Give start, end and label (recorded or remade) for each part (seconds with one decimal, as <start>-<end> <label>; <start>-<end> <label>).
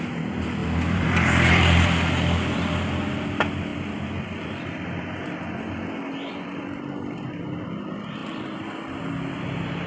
0.0-0.6 recorded; 0.6-2.1 remade; 2.1-8.2 recorded; 8.2-9.1 remade; 9.1-9.9 recorded